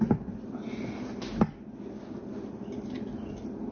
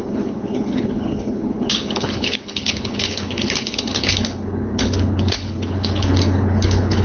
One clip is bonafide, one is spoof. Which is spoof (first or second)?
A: second